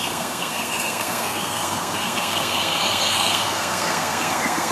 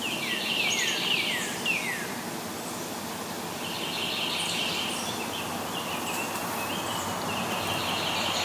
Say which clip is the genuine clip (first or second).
second